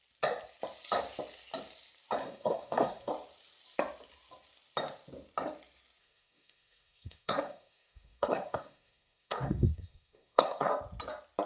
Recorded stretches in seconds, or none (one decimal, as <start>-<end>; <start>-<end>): 0.0-2.2; 3.1-6.0; 10.7-11.4